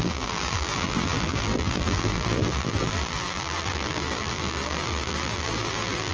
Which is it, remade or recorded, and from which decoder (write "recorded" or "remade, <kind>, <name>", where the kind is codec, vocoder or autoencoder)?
remade, vocoder, BigVGAN v2